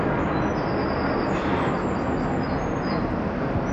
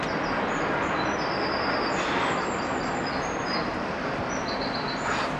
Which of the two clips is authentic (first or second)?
first